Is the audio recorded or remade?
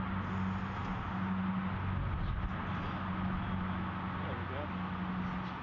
recorded